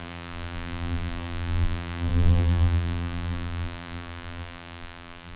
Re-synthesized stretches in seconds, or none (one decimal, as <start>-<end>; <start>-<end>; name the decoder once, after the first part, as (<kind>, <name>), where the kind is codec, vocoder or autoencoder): 0.0-5.4 (vocoder, BigVGAN v2)